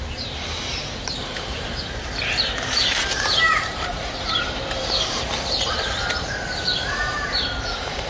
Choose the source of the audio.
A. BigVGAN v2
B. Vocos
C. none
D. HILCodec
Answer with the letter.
A